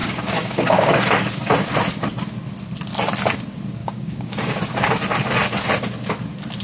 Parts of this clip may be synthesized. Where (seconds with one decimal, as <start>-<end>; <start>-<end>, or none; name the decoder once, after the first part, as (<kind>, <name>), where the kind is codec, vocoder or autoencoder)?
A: 0.0-1.0 (codec, DAC); 3.8-4.6